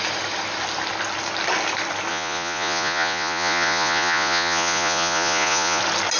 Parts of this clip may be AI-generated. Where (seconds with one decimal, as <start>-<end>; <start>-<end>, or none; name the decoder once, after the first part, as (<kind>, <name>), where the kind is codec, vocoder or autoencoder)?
2.1-5.8 (vocoder, Vocos)